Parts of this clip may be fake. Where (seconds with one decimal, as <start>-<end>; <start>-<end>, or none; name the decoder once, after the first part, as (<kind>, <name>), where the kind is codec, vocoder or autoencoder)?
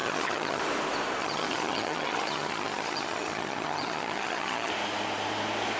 0.0-0.6 (vocoder, HiFi-GAN); 1.2-4.7